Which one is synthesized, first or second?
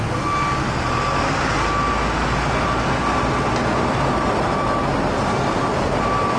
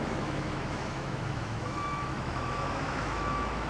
second